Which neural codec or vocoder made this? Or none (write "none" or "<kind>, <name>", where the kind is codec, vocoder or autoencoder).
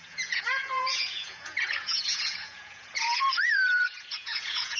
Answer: vocoder, Vocos